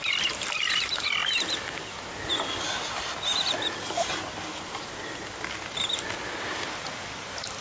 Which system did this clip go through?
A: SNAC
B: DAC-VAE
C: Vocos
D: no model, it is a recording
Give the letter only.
D